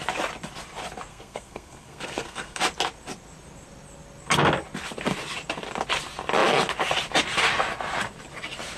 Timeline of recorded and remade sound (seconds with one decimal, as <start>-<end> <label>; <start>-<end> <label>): 0.0-1.1 recorded; 1.1-2.6 remade; 2.6-8.8 recorded